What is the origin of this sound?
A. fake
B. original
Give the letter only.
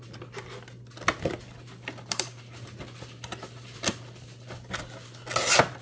B